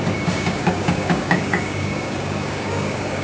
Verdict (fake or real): fake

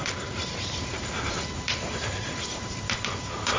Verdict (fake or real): fake